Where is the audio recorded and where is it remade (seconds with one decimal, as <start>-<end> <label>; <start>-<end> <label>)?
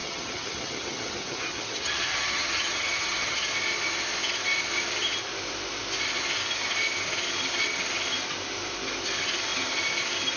0.0-3.5 remade; 3.5-10.4 recorded